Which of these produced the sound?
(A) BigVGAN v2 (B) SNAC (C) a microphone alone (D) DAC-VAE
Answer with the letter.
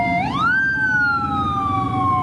C